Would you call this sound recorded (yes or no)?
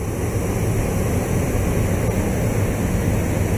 yes